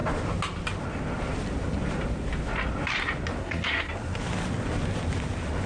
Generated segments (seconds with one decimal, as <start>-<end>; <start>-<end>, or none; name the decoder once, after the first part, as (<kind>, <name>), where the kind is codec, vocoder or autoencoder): 3.4-3.9 (codec, SNAC)